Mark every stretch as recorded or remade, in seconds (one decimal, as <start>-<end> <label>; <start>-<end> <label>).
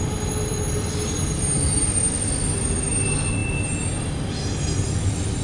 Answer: 0.0-5.4 recorded